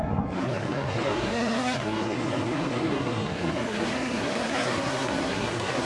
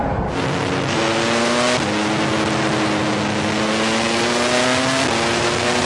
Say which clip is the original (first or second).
second